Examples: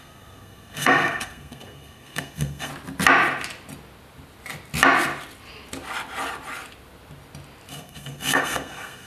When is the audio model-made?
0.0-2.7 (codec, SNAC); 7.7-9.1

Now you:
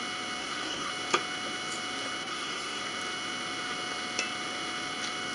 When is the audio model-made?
0.4-0.9 (codec, SNAC); 2.3-2.8

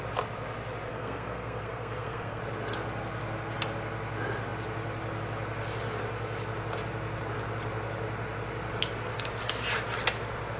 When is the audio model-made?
0.9-2.4 (codec, SNAC)

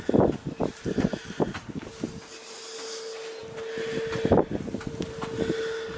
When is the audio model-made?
none

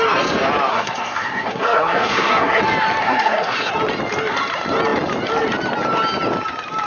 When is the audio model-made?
0.7-2.6 (codec, SNAC); 3.0-3.7

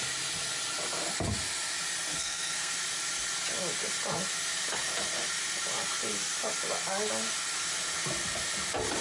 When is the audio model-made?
2.1-2.7 (codec, SNAC)

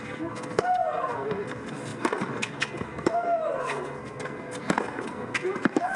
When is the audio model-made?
0.0-6.0 (codec, SNAC)

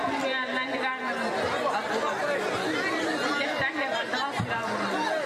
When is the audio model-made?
none